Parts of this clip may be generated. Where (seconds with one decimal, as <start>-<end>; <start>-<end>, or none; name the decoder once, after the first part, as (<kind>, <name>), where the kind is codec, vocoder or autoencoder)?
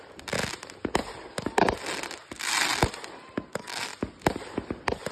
none